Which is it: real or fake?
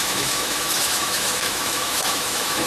fake